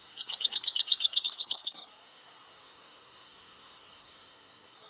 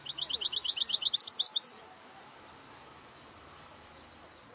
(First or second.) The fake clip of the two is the first